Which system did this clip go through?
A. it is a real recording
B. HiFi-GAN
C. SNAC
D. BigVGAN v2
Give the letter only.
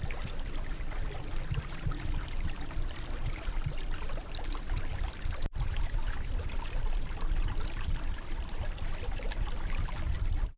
D